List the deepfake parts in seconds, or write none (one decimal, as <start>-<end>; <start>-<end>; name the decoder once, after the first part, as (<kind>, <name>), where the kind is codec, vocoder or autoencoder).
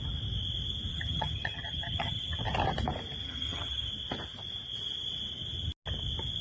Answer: 0.9-2.4 (vocoder, HiFi-GAN); 3.2-3.9